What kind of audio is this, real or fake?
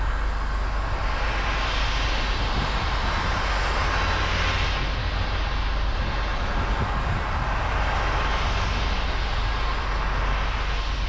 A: real